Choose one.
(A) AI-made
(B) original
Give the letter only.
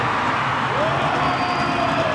B